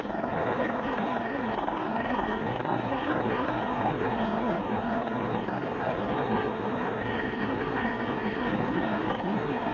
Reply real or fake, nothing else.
fake